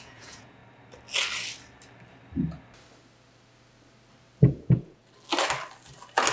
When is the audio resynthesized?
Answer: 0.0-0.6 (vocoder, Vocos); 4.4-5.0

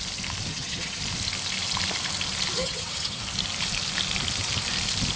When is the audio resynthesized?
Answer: 0.5-1.0 (vocoder, HiFi-GAN); 2.6-3.2

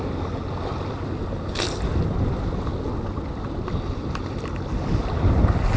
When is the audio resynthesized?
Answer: none

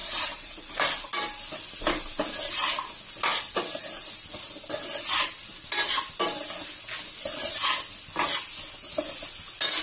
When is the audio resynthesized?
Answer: 0.0-0.6 (vocoder, BigVGAN v2)